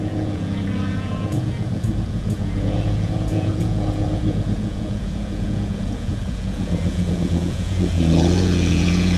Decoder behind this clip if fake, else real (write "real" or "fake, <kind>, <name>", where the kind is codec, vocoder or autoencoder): fake, vocoder, Vocos